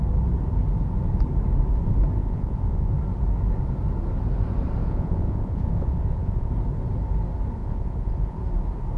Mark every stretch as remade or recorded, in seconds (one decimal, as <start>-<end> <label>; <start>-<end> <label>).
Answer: 0.0-2.2 recorded; 2.2-2.9 remade; 2.9-4.8 recorded; 4.8-6.5 remade; 6.5-7.6 recorded; 7.6-8.4 remade; 8.4-9.0 recorded